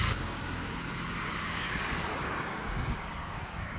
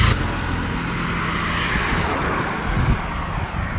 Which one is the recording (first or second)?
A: second